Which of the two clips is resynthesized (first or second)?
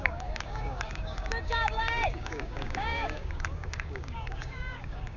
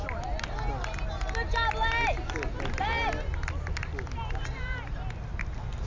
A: first